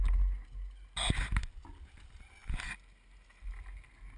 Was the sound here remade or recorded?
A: recorded